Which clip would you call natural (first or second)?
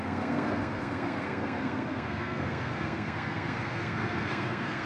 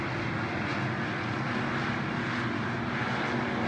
second